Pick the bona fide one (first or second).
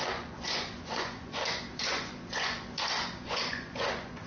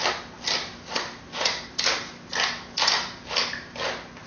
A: second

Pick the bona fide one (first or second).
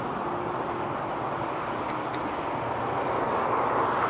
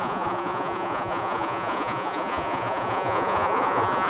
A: first